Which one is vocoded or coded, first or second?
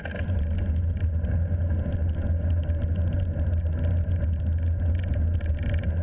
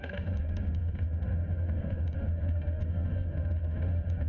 second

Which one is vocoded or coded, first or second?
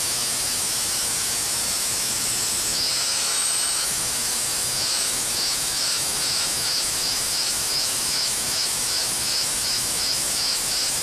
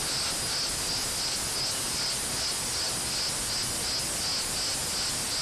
first